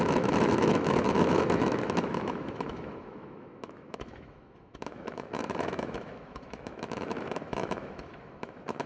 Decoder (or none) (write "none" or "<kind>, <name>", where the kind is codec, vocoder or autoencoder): autoencoder, DAC-VAE